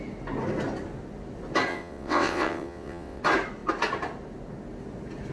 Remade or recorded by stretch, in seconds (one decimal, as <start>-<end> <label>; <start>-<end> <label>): 0.0-1.7 recorded; 1.7-3.2 remade; 3.2-5.3 recorded

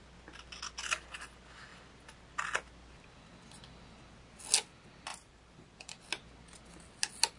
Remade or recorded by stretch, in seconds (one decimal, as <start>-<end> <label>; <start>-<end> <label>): 0.0-5.1 recorded; 5.1-6.0 remade; 6.0-7.4 recorded